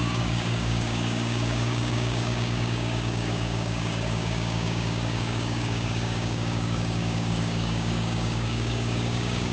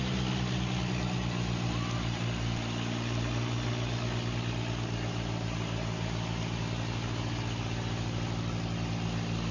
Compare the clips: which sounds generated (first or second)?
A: first